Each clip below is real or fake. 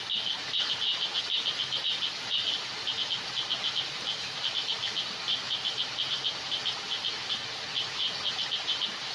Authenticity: real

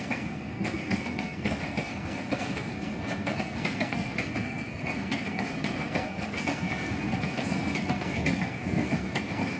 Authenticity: fake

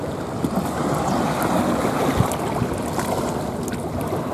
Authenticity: real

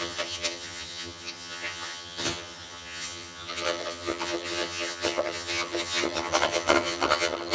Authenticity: fake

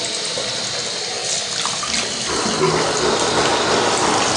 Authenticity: real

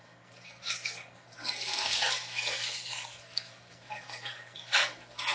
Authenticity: fake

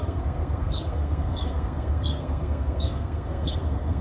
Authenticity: fake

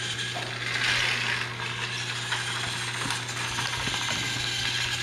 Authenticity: real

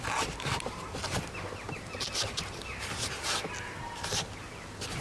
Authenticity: real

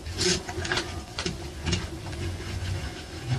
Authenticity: fake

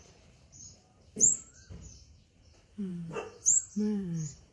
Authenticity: fake